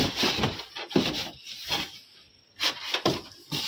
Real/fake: real